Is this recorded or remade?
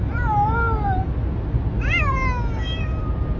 recorded